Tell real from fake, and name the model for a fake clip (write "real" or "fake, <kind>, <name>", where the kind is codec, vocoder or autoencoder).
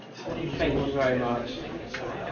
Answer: real